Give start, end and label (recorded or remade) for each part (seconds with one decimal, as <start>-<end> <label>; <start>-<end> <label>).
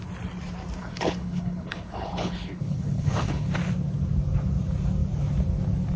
0.0-0.8 recorded; 0.8-3.6 remade; 3.6-6.0 recorded